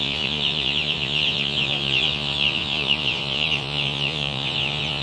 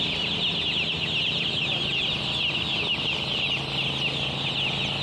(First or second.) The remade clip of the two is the first